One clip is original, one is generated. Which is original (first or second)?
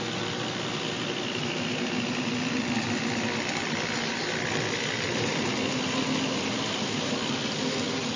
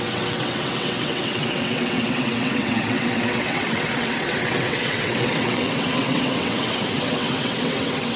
first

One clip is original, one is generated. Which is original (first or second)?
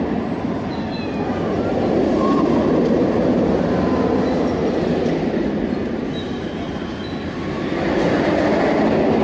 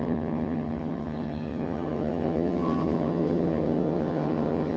first